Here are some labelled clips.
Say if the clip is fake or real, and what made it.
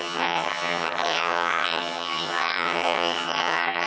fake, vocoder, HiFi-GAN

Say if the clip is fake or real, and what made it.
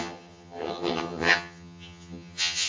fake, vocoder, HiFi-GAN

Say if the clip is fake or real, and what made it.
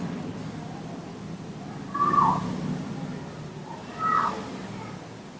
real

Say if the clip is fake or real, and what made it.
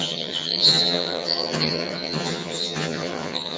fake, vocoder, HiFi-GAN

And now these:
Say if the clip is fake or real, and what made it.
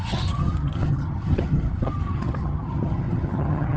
fake, vocoder, HiFi-GAN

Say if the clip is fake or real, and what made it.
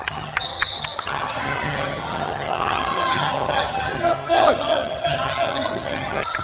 fake, vocoder, HiFi-GAN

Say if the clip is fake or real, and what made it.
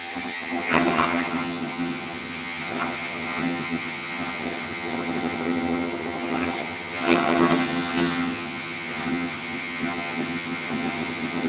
fake, vocoder, HiFi-GAN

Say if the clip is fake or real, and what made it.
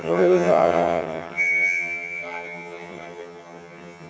fake, vocoder, HiFi-GAN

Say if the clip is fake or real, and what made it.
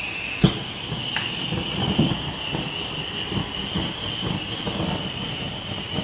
real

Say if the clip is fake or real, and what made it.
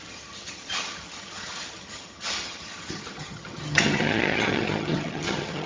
fake, vocoder, HiFi-GAN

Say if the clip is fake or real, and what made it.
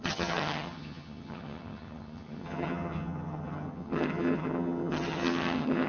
fake, vocoder, HiFi-GAN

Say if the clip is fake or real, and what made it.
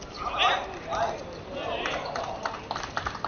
real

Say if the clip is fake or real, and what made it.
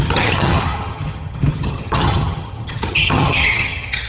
fake, vocoder, HiFi-GAN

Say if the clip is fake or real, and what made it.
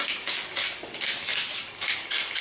real